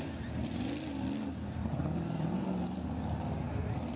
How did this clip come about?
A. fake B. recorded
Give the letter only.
B